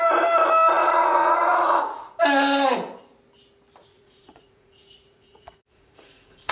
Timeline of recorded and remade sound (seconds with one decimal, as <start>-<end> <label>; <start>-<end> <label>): 0.0-0.8 recorded; 0.8-2.2 remade; 2.2-3.8 recorded; 3.8-6.5 remade